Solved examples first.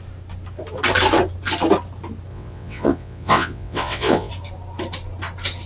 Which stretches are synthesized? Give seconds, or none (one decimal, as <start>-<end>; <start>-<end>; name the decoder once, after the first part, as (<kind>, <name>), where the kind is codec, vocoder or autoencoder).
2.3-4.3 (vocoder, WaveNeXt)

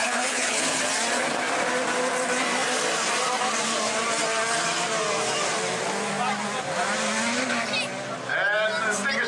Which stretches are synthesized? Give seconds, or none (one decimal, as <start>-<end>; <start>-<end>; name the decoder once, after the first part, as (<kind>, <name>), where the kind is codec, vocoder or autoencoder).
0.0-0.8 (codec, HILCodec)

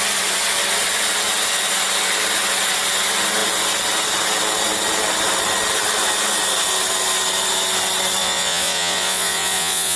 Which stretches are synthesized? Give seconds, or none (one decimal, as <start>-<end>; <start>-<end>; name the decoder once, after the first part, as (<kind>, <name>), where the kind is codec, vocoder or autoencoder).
8.2-10.0 (vocoder, Vocos)